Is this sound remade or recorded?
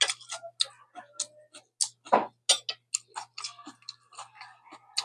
recorded